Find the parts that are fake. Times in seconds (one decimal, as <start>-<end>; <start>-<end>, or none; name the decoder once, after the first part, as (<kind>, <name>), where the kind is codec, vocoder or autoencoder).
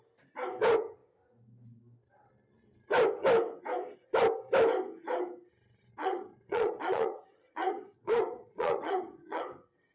6.0-9.4 (vocoder, Vocos)